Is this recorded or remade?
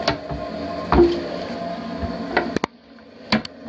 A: recorded